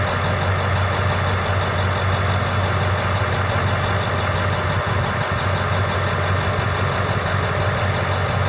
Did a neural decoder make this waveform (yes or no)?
no